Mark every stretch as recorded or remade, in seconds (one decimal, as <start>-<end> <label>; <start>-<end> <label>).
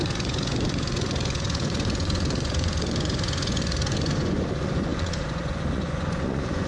0.0-6.7 remade